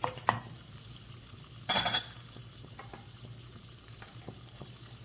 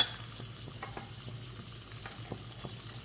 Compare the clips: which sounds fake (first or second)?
first